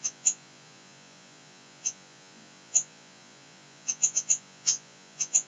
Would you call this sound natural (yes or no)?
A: no